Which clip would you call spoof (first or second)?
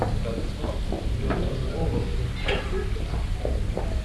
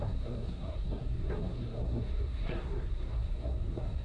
second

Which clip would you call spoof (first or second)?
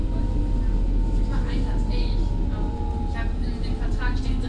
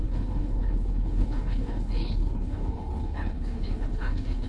second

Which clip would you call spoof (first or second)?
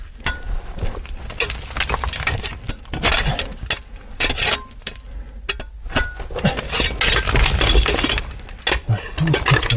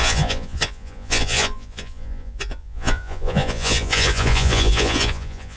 second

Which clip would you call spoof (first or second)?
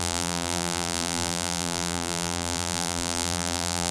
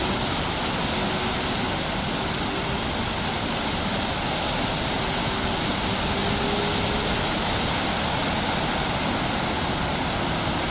first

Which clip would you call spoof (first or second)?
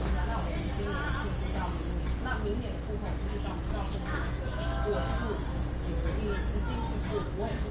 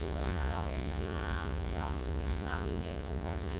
second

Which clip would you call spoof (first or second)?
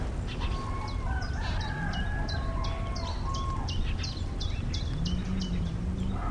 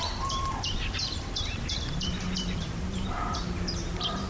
second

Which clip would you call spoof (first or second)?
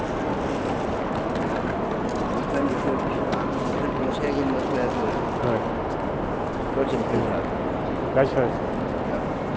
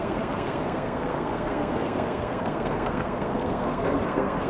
second